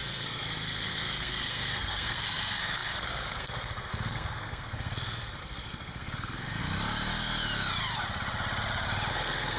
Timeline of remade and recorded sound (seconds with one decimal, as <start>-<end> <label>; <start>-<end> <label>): 0.0-6.6 remade; 6.6-9.1 recorded; 9.1-9.6 remade